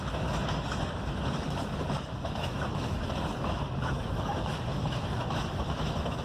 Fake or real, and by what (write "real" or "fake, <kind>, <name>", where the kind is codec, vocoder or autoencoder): fake, autoencoder, DAC-VAE